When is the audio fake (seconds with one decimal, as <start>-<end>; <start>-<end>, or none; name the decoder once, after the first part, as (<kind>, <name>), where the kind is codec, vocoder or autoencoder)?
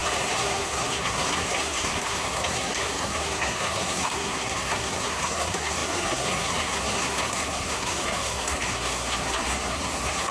0.0-10.3 (codec, SNAC)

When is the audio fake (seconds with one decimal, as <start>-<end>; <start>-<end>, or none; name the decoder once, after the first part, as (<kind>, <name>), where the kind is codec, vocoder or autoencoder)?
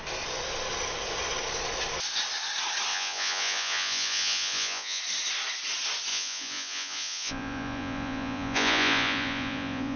2.9-5.0 (vocoder, Vocos); 6.1-10.0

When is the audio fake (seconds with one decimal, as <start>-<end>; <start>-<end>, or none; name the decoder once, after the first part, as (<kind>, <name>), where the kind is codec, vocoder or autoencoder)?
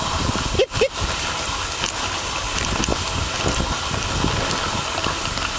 none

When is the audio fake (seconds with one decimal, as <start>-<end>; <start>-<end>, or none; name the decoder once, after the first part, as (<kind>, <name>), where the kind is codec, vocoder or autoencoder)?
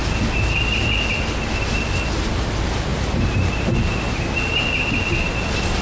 none